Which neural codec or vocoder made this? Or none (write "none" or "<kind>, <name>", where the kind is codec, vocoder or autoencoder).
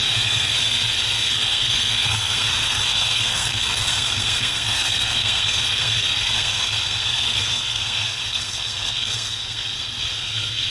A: codec, SNAC